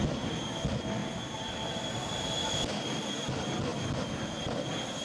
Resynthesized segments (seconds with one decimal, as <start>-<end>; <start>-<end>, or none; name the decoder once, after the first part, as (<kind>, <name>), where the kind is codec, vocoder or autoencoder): none

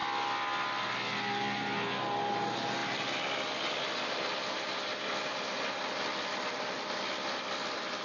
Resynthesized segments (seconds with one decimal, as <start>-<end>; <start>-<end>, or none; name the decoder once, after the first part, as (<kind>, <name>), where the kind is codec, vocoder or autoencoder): 1.2-2.8 (vocoder, BigVGAN v2); 3.8-5.5; 7.0-8.0

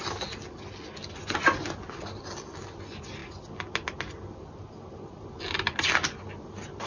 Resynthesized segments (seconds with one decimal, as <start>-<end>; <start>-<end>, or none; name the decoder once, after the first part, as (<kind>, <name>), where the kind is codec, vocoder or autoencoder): none

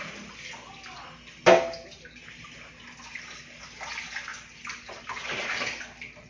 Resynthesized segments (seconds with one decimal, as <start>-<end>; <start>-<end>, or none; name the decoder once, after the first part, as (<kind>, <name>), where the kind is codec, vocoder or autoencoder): 4.3-5.4 (vocoder, BigVGAN v2)

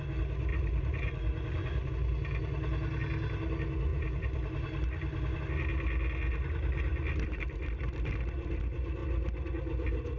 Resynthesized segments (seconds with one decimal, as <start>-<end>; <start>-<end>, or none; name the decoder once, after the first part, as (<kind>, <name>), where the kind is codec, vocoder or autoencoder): 0.5-1.9 (vocoder, BigVGAN v2); 3.9-5.4

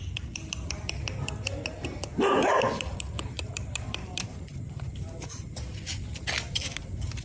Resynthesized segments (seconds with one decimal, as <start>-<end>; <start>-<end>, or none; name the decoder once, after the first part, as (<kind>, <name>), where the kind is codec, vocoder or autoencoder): 0.0-5.9 (vocoder, BigVGAN v2); 6.5-7.2